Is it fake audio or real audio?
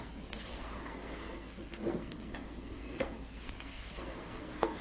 fake